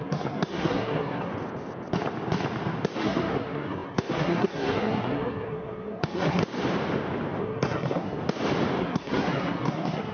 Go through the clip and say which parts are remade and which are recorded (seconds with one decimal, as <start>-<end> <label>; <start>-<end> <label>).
0.0-1.3 remade; 1.3-3.0 recorded; 3.0-6.4 remade; 6.4-7.4 recorded; 7.4-8.2 remade; 8.2-8.8 recorded; 8.8-10.1 remade